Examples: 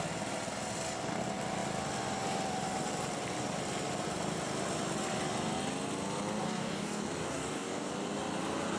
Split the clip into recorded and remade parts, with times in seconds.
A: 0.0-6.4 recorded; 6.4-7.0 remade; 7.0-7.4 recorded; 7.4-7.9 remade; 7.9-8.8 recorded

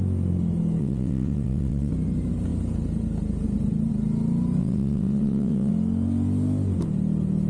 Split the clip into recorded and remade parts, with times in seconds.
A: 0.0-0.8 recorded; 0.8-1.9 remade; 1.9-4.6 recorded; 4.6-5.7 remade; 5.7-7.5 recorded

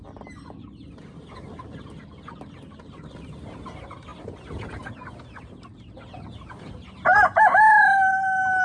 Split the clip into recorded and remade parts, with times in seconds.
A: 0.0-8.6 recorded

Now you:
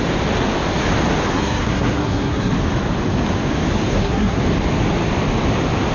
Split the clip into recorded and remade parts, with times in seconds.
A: 0.0-1.3 recorded; 1.3-2.5 remade; 2.5-3.9 recorded; 3.9-4.4 remade; 4.4-5.9 recorded

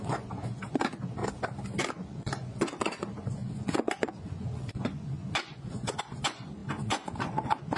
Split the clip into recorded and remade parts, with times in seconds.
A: 0.0-1.2 remade; 1.2-1.9 recorded; 1.9-7.8 remade

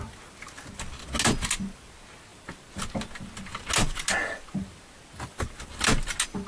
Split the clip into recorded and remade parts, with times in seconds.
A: 0.0-6.5 recorded

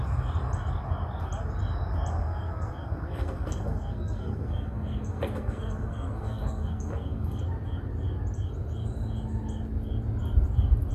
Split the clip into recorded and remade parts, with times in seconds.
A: 0.0-2.2 recorded; 2.2-7.4 remade; 7.4-10.9 recorded